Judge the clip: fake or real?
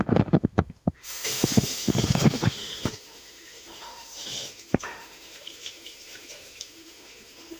fake